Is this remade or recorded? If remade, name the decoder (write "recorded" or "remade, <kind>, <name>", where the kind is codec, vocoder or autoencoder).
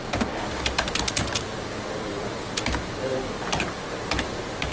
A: recorded